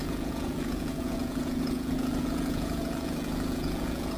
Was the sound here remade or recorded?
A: remade